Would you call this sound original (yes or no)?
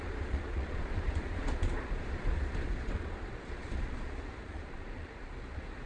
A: no